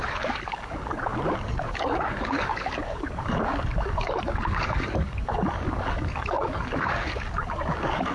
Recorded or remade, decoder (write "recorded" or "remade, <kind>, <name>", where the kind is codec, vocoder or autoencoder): remade, codec, DAC